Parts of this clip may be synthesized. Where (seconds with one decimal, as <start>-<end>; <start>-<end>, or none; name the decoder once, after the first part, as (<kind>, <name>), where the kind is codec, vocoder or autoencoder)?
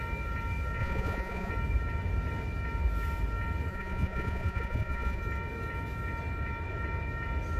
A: 0.8-1.5 (vocoder, Vocos); 3.7-5.2